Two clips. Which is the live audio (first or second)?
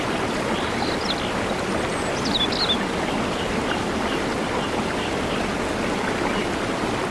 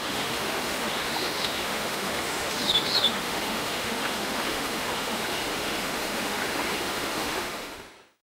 first